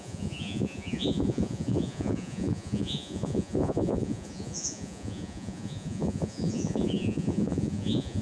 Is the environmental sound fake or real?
fake